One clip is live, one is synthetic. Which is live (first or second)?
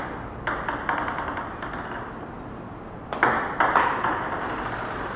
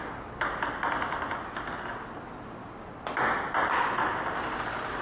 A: second